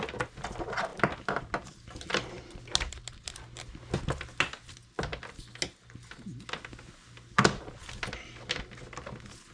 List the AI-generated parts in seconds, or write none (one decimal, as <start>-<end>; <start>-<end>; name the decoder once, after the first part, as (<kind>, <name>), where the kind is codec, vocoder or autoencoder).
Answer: 0.9-2.6 (vocoder, BigVGAN v2)